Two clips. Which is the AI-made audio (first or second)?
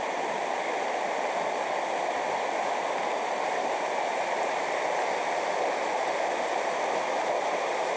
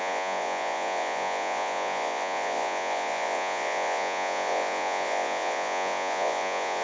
second